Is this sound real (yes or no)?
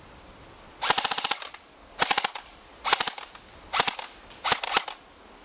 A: yes